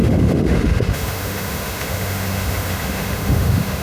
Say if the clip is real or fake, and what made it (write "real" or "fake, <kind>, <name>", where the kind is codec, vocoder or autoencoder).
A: fake, autoencoder, DAC-VAE